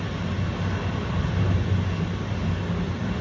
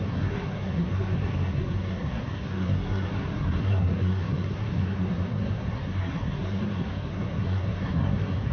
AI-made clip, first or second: second